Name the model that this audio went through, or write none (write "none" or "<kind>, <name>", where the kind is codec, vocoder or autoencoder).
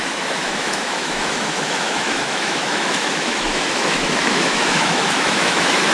autoencoder, DAC-VAE